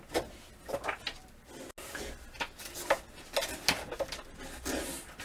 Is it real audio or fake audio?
real